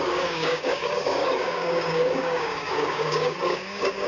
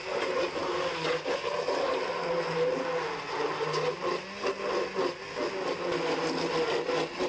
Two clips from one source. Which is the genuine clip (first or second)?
second